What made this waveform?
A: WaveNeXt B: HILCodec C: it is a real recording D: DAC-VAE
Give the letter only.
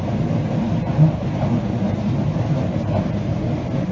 C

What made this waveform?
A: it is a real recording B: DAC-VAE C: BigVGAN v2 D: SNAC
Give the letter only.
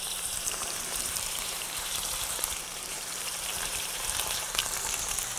C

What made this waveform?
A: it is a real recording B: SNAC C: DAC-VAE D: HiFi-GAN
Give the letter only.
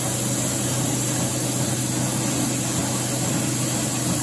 A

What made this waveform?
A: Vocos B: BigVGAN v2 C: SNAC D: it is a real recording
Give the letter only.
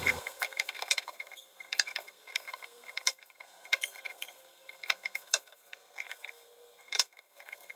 C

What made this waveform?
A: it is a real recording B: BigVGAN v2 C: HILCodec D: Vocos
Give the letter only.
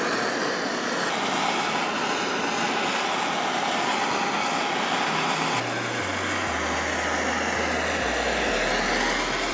A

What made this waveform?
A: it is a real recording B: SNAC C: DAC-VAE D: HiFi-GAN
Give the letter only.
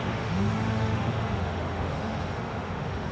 C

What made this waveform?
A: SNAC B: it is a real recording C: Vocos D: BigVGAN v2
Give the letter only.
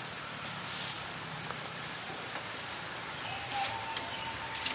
D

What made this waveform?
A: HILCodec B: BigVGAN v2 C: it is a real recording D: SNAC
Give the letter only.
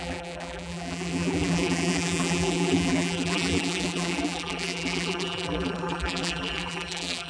B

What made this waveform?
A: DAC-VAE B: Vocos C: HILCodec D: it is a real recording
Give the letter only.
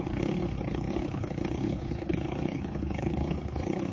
C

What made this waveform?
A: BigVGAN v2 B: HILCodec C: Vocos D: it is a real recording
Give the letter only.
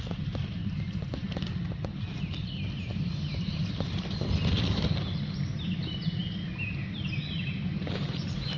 D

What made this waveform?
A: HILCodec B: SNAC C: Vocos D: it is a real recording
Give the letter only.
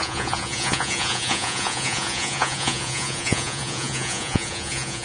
C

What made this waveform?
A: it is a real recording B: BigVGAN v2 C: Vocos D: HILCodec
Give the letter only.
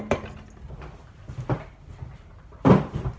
A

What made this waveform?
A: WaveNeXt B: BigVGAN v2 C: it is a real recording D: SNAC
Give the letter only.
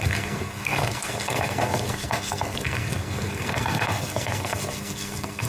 D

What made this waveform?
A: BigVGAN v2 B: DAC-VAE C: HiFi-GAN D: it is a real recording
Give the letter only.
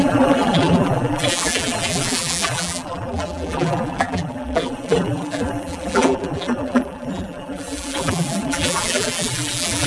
A